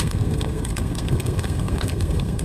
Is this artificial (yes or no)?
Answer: yes